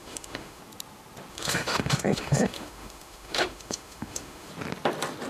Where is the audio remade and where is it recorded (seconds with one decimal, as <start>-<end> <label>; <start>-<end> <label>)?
0.0-0.6 remade; 0.6-1.3 recorded; 1.3-4.5 remade; 4.5-5.3 recorded